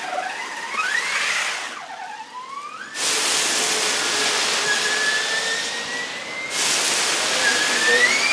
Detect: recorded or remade recorded